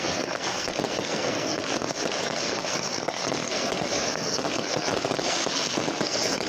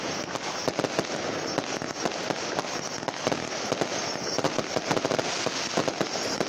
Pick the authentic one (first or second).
second